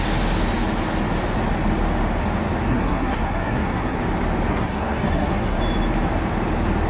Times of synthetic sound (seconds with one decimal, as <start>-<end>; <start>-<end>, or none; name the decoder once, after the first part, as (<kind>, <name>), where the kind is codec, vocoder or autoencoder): 2.7-4.0 (codec, SNAC); 4.5-5.6